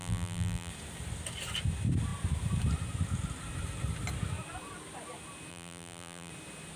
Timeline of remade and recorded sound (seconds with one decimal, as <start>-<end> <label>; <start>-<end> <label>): 0.0-0.7 remade; 0.7-5.5 recorded; 5.5-6.3 remade; 6.3-6.8 recorded